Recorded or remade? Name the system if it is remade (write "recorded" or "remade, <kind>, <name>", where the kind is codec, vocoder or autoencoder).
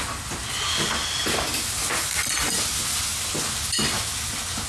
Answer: recorded